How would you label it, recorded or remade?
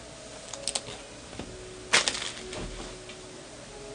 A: recorded